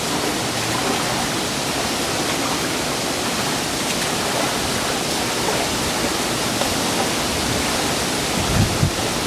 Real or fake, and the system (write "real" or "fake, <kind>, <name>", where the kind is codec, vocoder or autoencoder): real